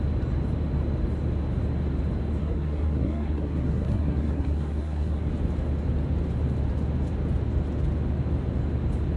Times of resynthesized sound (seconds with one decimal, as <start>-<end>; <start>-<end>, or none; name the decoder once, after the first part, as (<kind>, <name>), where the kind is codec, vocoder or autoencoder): 2.4-5.3 (codec, SNAC)